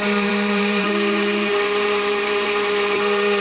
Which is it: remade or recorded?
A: remade